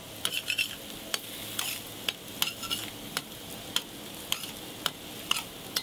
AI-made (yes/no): no